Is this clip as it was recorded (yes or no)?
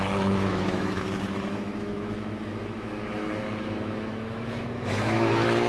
no